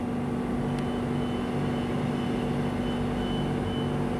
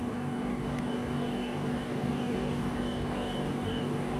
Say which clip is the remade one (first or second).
second